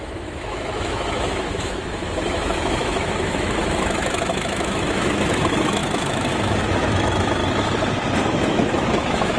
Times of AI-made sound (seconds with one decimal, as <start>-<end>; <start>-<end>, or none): 0.0-7.4; 8.3-9.4